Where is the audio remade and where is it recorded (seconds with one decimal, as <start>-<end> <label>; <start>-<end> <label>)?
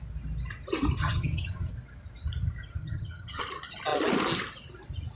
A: 0.0-1.0 recorded; 1.0-1.7 remade; 1.7-2.8 recorded; 2.8-3.4 remade; 3.4-5.2 recorded